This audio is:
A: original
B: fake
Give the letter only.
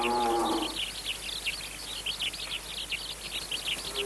A